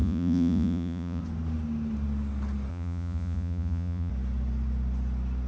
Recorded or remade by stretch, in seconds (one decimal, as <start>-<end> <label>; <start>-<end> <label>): 0.0-1.2 remade; 1.2-2.7 recorded; 2.7-4.1 remade; 4.1-5.5 recorded